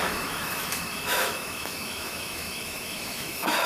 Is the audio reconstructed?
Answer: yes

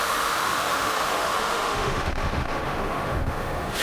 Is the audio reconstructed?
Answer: yes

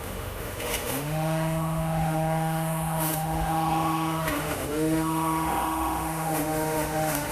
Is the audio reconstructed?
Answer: yes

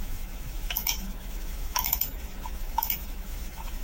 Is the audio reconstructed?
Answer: yes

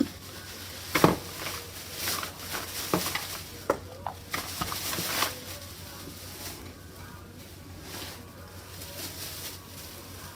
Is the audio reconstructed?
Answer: no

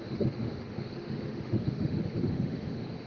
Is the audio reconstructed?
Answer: yes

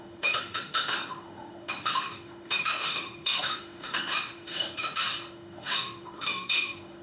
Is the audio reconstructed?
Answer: yes